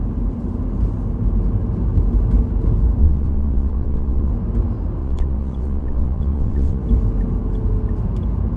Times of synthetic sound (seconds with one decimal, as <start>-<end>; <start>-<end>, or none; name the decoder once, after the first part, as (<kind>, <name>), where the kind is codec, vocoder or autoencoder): 3.0-4.3 (vocoder, WaveNeXt); 5.0-6.8

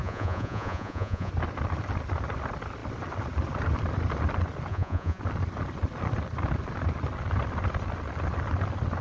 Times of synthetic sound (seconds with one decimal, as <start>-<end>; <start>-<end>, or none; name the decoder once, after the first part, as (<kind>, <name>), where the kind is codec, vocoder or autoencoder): 0.0-1.3 (vocoder, Vocos); 4.7-5.2

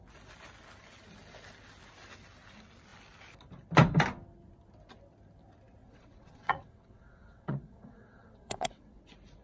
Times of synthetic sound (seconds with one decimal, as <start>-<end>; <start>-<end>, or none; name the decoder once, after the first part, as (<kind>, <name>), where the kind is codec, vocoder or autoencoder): 5.8-9.0 (vocoder, WaveNeXt)

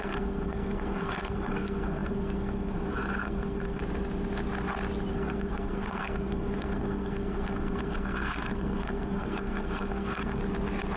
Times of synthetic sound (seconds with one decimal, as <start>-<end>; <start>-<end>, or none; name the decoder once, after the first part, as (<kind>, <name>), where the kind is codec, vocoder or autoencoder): 0.0-3.8 (codec, SNAC); 5.1-10.4

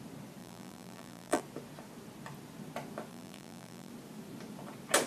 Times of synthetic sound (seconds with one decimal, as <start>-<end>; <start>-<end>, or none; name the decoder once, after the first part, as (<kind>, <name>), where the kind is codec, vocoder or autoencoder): 0.4-1.4 (vocoder, BigVGAN v2); 3.1-3.9

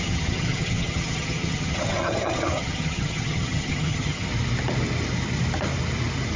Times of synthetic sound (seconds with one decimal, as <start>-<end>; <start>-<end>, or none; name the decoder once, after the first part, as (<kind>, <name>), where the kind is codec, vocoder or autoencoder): 0.0-4.3 (vocoder, HiFi-GAN)

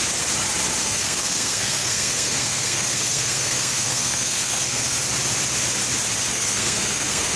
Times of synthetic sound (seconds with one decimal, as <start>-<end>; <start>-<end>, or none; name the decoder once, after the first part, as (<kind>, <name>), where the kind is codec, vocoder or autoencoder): 0.8-5.0 (codec, SNAC); 6.3-7.4

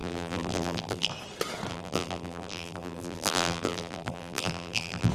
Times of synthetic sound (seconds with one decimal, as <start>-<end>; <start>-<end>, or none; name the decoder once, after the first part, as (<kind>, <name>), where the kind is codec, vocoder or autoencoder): 0.0-1.1 (vocoder, BigVGAN v2); 1.7-5.1